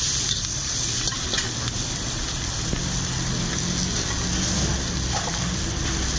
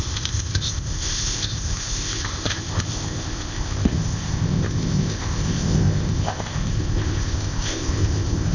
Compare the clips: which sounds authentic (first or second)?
first